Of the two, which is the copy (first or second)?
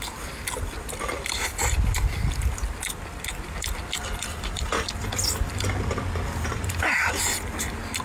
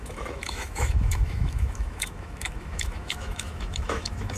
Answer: second